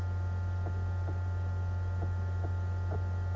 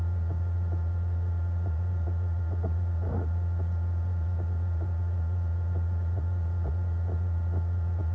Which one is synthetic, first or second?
second